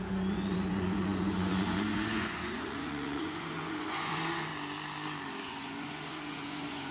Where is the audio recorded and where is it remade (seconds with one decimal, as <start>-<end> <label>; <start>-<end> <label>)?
0.0-4.5 remade; 4.5-5.4 recorded; 5.4-6.9 remade